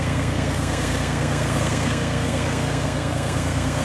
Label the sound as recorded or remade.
remade